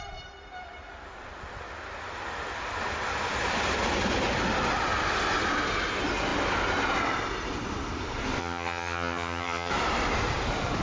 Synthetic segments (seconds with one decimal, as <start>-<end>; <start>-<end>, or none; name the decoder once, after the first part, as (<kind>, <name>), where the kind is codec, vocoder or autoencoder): 8.4-9.7 (vocoder, HiFi-GAN)